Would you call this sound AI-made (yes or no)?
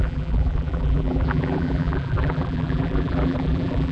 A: yes